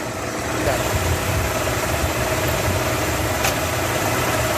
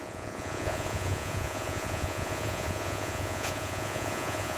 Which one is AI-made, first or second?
second